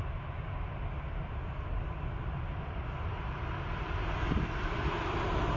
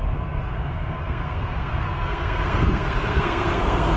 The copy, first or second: second